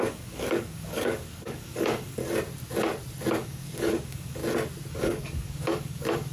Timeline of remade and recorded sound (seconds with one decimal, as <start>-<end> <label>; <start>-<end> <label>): 0.0-2.2 remade; 2.2-3.3 recorded; 3.3-4.4 remade; 4.4-4.9 recorded; 4.9-6.3 remade